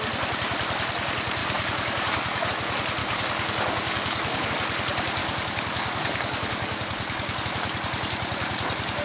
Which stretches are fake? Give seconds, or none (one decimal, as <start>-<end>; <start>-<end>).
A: 1.4-2.5; 3.0-4.5; 5.2-7.4